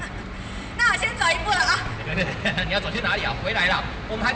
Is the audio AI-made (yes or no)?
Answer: no